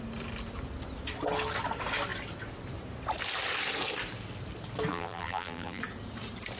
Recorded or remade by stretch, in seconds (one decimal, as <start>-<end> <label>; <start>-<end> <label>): 0.0-4.9 recorded; 4.9-5.8 remade; 5.8-6.6 recorded